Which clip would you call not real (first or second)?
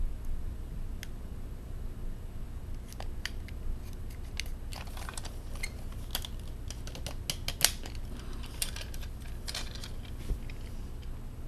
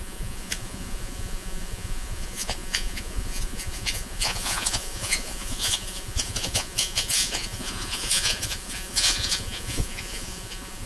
second